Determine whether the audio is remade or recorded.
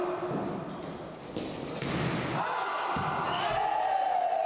recorded